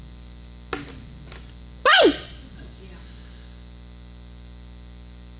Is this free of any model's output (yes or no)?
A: yes